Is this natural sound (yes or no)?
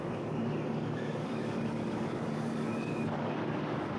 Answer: no